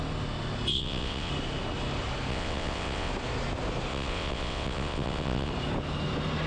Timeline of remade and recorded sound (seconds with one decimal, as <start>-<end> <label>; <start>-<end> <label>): 0.0-0.7 recorded; 0.7-1.3 remade; 1.3-2.3 recorded; 2.3-3.1 remade; 3.1-3.9 recorded; 3.9-5.5 remade; 5.5-6.5 recorded